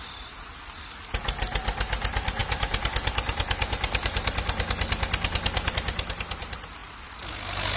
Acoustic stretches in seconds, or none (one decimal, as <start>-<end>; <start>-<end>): 0.0-7.8